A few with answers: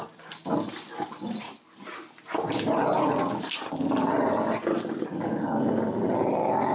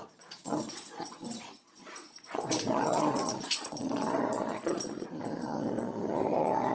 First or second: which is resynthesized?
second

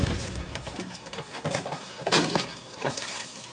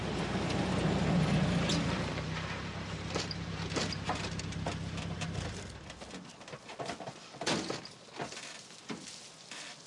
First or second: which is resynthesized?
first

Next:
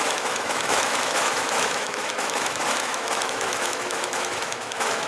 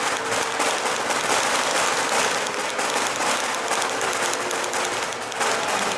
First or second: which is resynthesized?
first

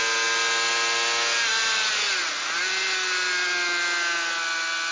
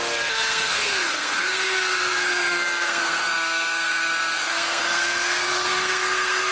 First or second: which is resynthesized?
second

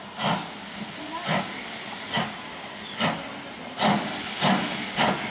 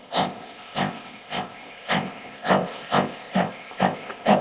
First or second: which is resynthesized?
second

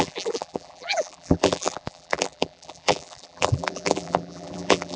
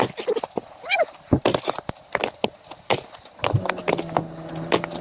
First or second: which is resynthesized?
first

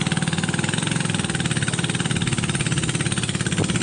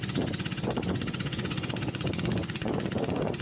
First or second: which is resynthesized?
second